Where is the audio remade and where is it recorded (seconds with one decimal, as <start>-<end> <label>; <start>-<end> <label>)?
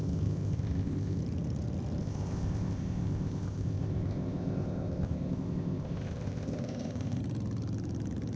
0.0-1.2 remade; 1.2-2.0 recorded; 2.0-7.2 remade; 7.2-8.4 recorded